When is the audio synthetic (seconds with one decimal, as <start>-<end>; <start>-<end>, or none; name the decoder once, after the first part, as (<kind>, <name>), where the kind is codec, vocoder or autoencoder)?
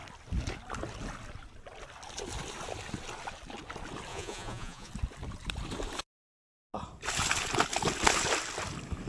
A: 4.1-4.9 (vocoder, Vocos)